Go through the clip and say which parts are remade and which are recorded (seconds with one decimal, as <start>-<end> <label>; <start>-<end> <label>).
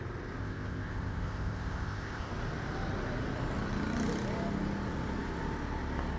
0.0-0.4 recorded; 0.4-2.3 remade; 2.3-6.2 recorded